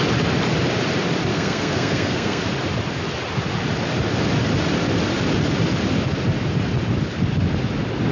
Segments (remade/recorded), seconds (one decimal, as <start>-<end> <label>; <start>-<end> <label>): 0.0-1.3 recorded; 1.3-2.4 remade; 2.4-8.1 recorded